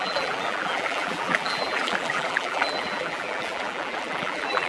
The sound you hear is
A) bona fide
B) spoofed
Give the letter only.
B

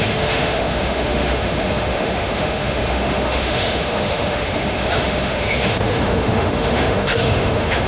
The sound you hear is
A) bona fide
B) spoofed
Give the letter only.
B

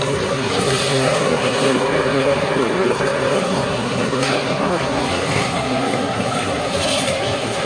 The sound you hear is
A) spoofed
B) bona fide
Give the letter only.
A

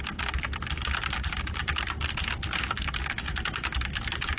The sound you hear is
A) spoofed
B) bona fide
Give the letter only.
B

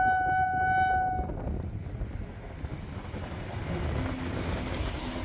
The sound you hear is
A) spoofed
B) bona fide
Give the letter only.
B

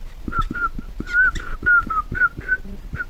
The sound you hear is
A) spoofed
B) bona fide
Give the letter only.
B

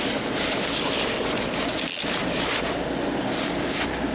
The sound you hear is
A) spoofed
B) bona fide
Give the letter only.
B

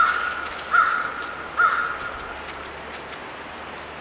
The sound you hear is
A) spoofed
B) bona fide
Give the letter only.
B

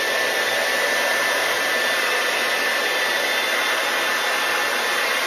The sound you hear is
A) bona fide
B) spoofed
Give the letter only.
A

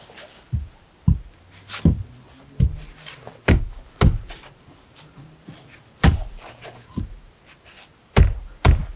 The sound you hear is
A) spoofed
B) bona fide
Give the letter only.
B